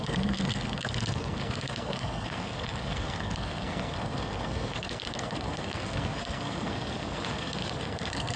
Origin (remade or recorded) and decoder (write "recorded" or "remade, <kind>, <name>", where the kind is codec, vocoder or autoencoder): remade, codec, SNAC